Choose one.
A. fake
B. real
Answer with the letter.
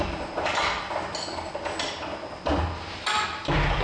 B